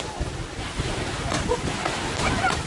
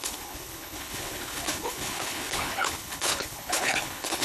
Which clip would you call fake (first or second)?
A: second